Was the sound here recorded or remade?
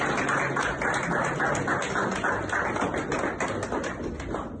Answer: recorded